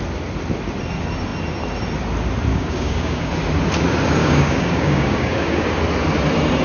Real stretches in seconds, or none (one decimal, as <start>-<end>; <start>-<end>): 0.0-2.5; 3.3-4.2; 5.7-6.6